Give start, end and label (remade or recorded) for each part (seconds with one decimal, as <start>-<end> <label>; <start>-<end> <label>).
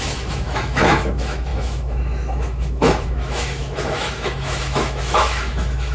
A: 0.0-5.9 remade